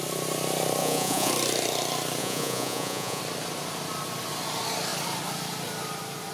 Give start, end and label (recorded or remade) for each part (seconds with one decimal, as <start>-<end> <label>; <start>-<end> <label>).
0.0-0.8 recorded; 0.8-1.3 remade; 1.3-2.2 recorded; 2.2-3.2 remade; 3.2-6.3 recorded